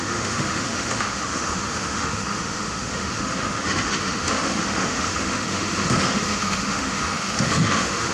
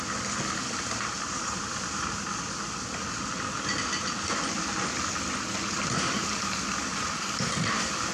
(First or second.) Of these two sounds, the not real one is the first